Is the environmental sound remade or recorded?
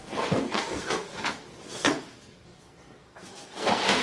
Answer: remade